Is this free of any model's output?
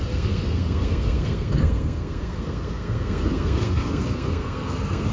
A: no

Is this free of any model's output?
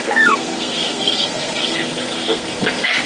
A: no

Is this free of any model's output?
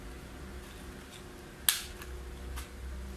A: yes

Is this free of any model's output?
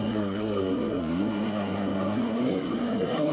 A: no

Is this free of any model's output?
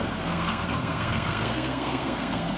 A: no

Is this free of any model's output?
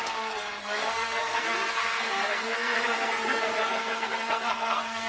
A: no